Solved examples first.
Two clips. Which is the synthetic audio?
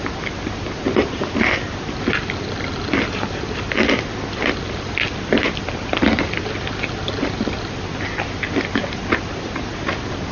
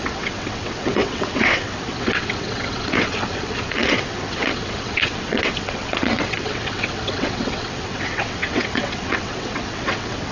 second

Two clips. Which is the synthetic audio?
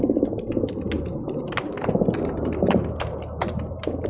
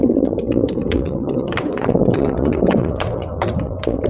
second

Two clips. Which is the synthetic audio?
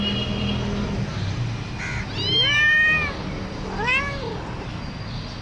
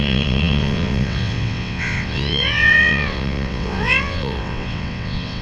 second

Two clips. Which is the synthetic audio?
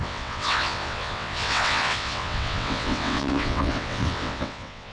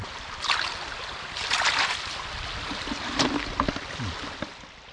first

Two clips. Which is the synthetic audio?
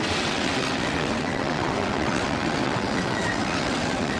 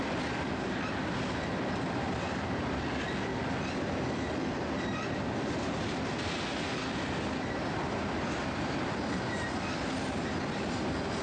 first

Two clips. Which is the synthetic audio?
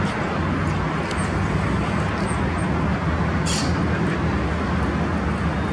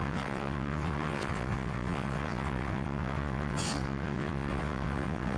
second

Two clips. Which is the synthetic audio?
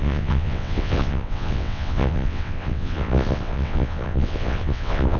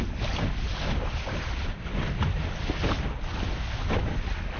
first